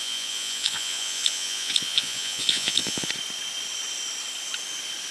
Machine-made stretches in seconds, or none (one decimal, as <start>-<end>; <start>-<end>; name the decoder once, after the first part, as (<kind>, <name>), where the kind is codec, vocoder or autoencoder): 0.0-3.1 (vocoder, Vocos)